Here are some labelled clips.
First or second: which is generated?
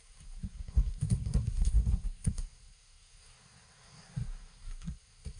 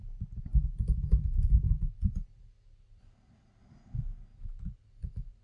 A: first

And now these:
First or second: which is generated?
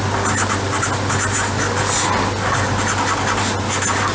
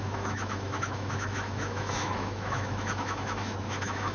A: second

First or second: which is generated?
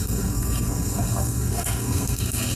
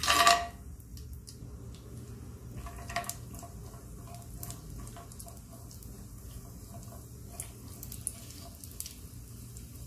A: first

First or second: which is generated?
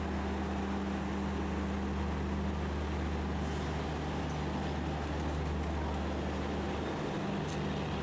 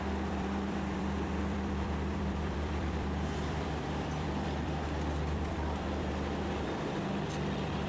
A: second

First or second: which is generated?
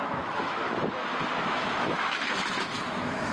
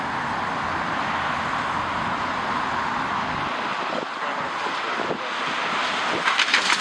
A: first